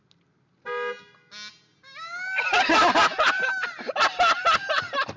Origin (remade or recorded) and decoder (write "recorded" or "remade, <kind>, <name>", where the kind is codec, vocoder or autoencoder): recorded